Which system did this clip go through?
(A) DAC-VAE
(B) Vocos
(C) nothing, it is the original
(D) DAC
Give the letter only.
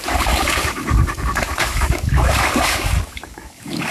D